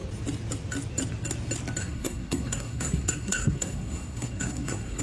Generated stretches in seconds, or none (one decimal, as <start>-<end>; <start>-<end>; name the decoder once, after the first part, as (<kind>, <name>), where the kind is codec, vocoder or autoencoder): 1.8-5.0 (codec, SNAC)